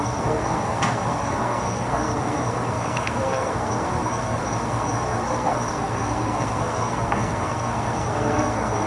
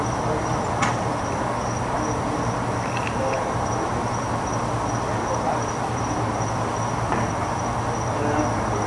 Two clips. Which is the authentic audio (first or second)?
second